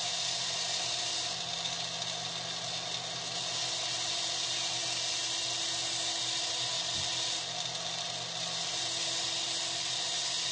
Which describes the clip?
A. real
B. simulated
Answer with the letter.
A